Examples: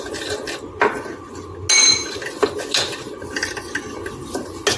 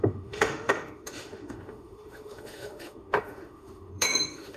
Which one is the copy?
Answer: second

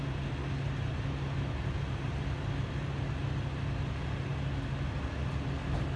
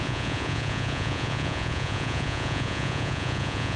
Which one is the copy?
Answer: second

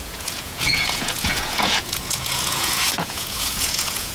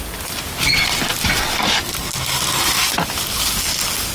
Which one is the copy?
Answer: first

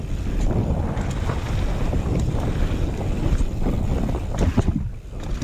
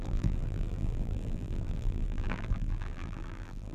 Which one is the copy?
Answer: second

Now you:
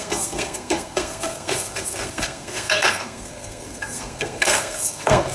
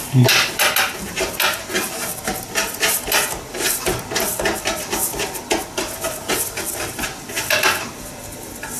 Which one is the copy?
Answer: first